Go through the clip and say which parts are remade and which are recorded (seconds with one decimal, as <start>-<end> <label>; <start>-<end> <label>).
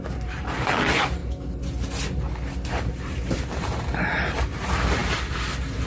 0.0-1.2 remade; 1.2-2.7 recorded; 2.7-5.9 remade